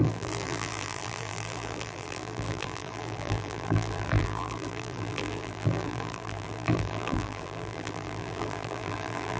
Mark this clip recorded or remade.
remade